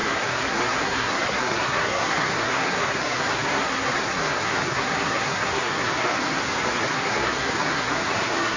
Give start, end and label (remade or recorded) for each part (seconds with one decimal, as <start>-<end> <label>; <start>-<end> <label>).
0.0-8.6 remade